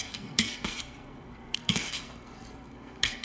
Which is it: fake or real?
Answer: fake